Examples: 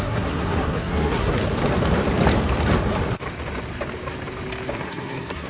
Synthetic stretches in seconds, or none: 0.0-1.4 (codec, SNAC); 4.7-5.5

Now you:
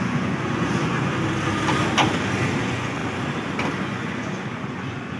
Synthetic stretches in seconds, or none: 0.0-1.1 (vocoder, Vocos); 2.6-3.0; 3.8-5.2

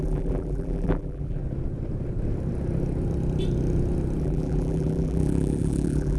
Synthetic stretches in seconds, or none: 0.0-1.4 (vocoder, BigVGAN v2); 4.2-6.2

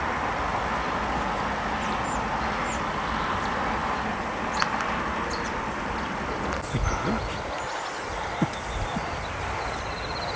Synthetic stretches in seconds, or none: none

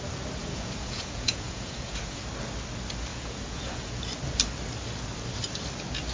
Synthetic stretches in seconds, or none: 0.4-2.2 (vocoder, Vocos); 3.1-3.9